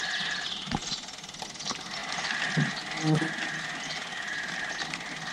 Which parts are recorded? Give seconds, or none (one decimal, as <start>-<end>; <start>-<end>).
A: 0.0-5.3